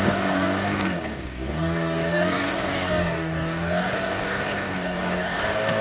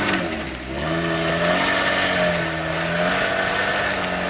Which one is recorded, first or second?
second